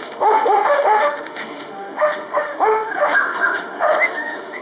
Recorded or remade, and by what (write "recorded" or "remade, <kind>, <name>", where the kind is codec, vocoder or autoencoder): remade, autoencoder, DAC-VAE